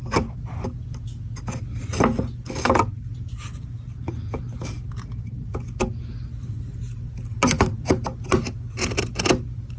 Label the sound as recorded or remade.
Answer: recorded